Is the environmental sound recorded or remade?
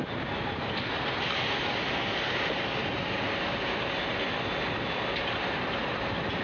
recorded